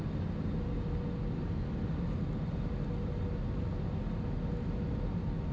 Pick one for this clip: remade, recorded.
recorded